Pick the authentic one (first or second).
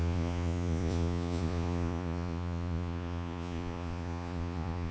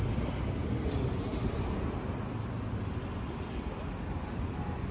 second